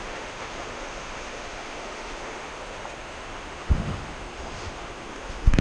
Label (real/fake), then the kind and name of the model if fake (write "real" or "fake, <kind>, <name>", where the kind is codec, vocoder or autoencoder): fake, autoencoder, DAC-VAE